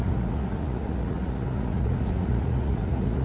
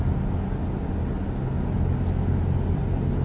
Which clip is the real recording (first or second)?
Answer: second